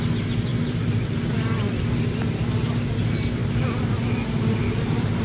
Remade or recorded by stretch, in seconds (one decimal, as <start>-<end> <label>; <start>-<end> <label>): 0.0-0.5 recorded; 0.5-1.8 remade; 1.8-5.2 recorded